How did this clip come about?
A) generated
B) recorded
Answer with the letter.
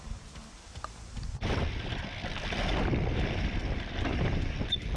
A